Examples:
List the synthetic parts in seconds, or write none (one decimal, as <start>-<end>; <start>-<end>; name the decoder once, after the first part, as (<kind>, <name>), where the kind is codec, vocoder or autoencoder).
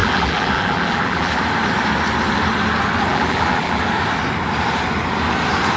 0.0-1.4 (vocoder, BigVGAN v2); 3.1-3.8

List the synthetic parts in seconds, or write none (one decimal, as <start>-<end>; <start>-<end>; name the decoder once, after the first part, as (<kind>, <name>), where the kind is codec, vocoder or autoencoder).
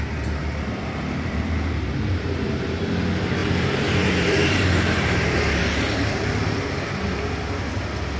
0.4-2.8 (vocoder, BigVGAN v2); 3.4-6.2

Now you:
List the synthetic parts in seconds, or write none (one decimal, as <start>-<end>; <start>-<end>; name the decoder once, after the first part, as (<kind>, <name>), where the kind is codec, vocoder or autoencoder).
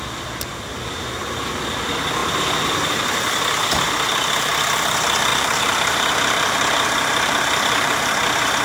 0.5-1.2 (vocoder, BigVGAN v2); 5.3-8.1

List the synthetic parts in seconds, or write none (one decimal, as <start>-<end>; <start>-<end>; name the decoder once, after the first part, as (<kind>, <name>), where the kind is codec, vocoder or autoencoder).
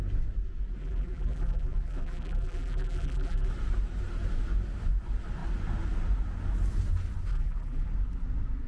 0.8-3.5 (vocoder, BigVGAN v2); 7.3-7.9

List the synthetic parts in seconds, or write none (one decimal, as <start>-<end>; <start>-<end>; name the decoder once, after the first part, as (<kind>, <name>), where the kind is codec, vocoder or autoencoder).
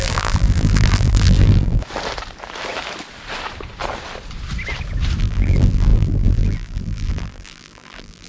0.0-1.8 (vocoder, BigVGAN v2); 5.2-8.3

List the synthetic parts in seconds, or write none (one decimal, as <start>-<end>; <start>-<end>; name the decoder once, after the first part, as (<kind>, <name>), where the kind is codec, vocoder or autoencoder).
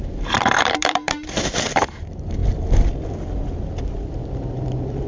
0.0-2.4 (vocoder, BigVGAN v2); 3.8-5.1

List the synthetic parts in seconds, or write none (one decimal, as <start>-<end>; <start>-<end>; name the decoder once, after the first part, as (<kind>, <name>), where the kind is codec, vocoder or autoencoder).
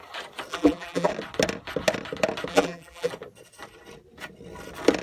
0.5-1.1 (vocoder, BigVGAN v2); 2.5-3.1